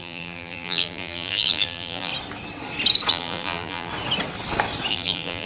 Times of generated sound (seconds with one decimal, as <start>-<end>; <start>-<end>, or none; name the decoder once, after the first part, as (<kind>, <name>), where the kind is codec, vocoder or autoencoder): 0.0-2.1 (vocoder, BigVGAN v2); 3.1-3.9; 4.9-5.5